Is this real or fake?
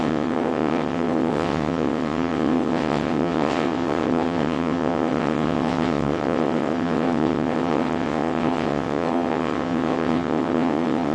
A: fake